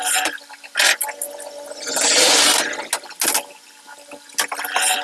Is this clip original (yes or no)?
yes